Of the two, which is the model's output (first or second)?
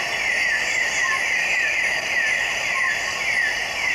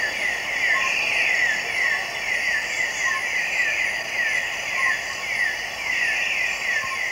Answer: first